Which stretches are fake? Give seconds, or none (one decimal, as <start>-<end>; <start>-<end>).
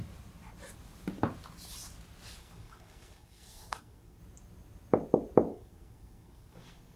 2.4-4.2; 5.5-7.0